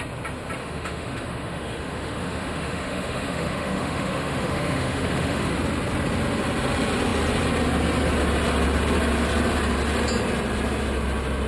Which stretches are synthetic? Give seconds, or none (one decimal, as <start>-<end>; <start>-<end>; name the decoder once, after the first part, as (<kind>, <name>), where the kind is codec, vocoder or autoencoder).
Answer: 0.6-5.5 (autoencoder, DAC-VAE)